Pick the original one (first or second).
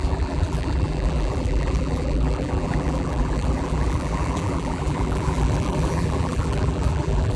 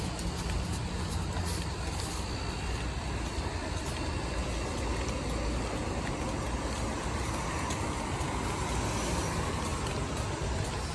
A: second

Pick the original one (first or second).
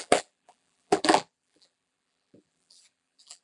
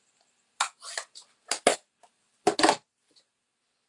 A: second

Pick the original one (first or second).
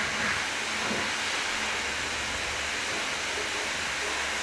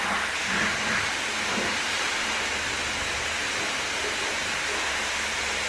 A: first